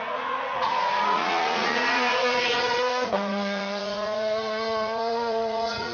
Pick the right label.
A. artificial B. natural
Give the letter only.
A